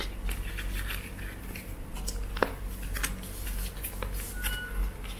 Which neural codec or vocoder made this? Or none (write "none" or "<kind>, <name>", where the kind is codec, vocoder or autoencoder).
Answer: none